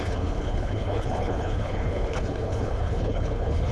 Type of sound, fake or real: fake